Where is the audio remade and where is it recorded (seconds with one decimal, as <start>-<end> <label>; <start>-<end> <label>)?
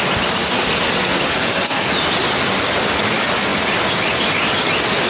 0.0-1.3 recorded; 1.3-1.9 remade; 1.9-5.1 recorded